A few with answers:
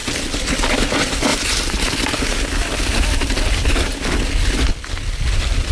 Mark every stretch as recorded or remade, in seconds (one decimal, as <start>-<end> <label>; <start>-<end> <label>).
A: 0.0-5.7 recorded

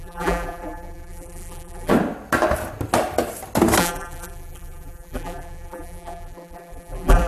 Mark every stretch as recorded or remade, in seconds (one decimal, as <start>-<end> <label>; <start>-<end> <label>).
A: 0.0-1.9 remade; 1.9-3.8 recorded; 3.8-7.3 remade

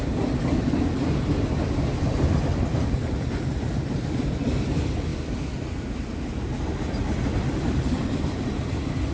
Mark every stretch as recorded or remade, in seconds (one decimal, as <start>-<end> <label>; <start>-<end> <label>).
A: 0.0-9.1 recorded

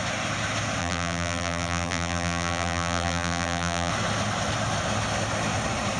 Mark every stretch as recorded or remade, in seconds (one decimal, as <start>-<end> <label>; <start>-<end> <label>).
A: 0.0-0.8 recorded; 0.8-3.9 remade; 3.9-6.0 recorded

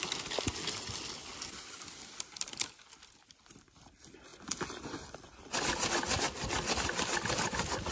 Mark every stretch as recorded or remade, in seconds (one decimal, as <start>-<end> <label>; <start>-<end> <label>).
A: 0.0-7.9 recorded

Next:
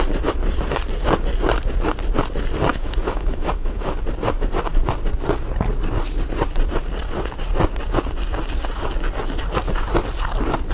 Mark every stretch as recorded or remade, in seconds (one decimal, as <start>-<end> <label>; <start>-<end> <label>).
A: 0.0-2.7 recorded; 2.7-3.9 remade; 3.9-10.7 recorded

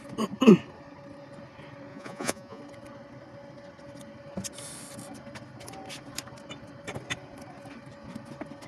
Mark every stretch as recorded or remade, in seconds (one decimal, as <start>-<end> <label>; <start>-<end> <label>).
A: 0.0-1.9 recorded; 1.9-2.6 remade; 2.6-8.7 recorded